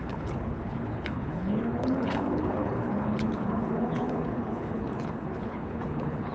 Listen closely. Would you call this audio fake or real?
fake